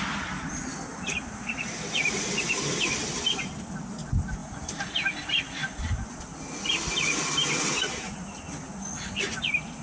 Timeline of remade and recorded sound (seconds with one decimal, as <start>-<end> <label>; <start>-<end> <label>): 0.0-9.8 recorded